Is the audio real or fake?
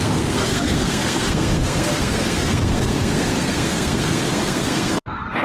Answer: fake